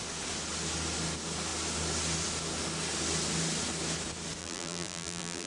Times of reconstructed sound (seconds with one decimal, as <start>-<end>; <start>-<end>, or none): 4.4-5.5